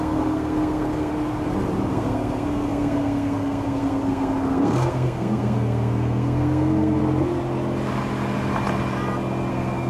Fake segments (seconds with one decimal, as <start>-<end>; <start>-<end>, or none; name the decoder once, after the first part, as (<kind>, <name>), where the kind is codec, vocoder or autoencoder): 0.0-1.1 (codec, SNAC); 1.9-7.0; 9.5-9.9